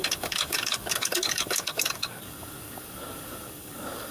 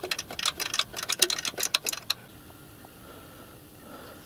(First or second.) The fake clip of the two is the first